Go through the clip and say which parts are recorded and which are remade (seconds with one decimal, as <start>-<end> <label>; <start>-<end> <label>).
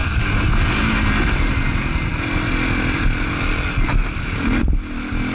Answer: 0.0-5.3 recorded